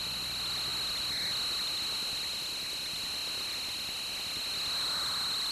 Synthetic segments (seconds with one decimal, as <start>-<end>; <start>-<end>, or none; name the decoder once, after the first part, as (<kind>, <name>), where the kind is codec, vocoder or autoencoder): none